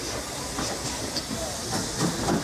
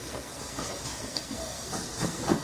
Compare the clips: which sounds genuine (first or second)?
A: first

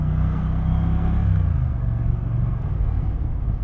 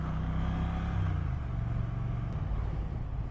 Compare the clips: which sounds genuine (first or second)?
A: second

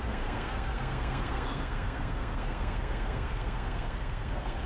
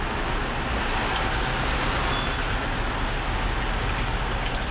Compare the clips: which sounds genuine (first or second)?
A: second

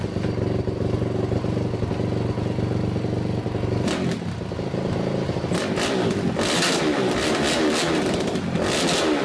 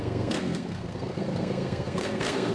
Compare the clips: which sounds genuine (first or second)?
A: first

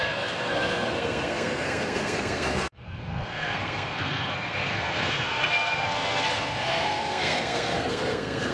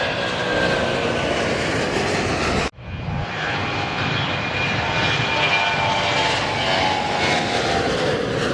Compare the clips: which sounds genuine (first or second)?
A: second